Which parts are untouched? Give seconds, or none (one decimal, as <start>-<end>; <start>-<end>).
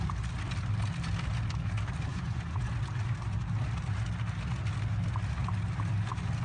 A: 0.0-2.1; 2.7-6.4